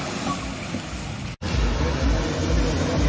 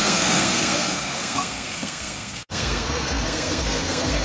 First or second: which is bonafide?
first